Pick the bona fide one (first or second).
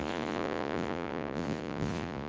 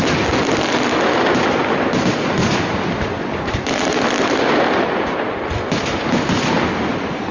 second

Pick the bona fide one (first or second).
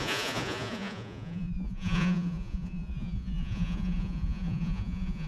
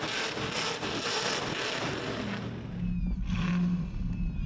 second